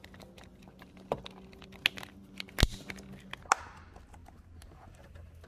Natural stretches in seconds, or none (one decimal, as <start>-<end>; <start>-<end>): 0.0-5.5